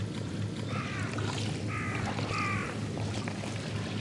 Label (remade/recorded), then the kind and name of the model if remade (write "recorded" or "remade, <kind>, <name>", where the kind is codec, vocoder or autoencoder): recorded